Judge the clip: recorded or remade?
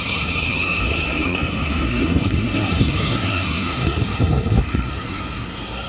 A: remade